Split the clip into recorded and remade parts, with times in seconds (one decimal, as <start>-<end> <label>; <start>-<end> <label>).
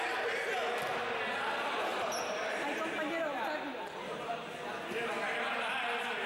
0.0-6.3 recorded